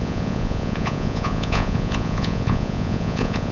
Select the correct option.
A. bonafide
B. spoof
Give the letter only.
B